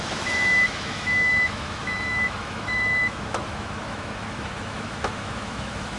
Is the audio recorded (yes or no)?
no